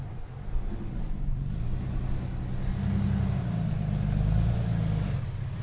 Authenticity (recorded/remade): recorded